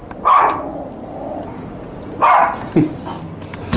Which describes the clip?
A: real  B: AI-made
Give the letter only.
A